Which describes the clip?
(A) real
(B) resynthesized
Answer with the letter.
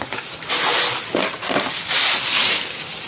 A